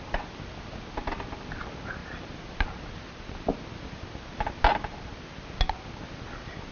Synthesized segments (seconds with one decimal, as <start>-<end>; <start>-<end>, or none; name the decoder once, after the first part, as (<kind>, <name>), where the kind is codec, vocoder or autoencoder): none